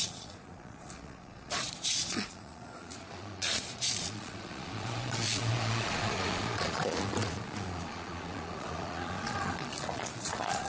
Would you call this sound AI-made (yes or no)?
yes